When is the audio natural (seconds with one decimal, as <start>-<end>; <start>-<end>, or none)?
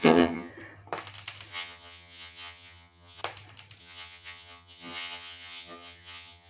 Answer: 0.5-1.5; 3.2-3.8